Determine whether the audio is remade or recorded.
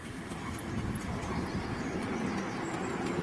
recorded